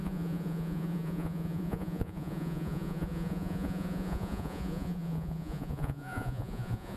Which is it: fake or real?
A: fake